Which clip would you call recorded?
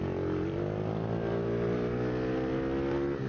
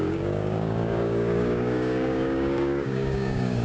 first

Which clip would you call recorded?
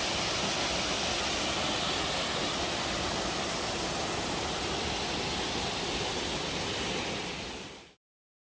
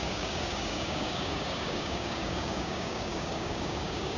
first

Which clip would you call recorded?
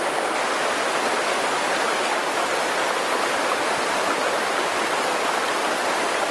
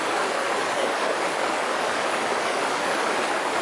first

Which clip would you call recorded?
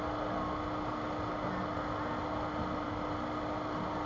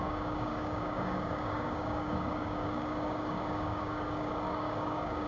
first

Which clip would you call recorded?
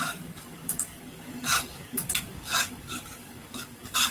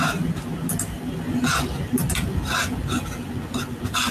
second